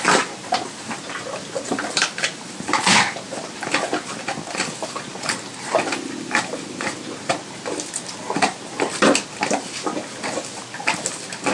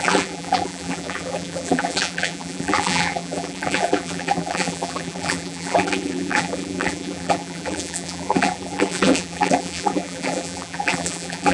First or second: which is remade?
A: second